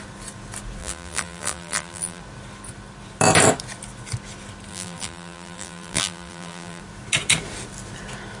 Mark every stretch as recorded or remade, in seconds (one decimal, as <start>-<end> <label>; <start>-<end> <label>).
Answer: 0.0-0.8 recorded; 0.8-2.2 remade; 2.2-4.7 recorded; 4.7-6.8 remade; 6.8-8.4 recorded